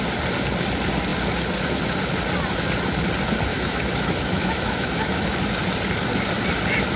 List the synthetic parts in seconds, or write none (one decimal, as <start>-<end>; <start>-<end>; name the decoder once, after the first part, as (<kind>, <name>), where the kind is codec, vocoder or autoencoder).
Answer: 3.5-5.3 (autoencoder, DAC-VAE)